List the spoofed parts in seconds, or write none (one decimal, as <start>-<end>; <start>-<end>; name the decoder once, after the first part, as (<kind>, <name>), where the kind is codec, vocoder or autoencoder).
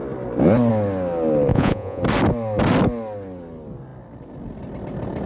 1.5-2.0 (vocoder, Vocos)